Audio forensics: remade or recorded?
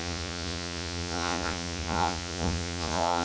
remade